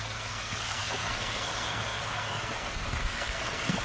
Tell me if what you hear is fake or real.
fake